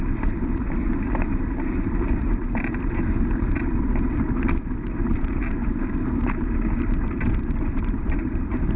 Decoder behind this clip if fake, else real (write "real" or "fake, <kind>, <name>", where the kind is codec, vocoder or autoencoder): fake, vocoder, BigVGAN v2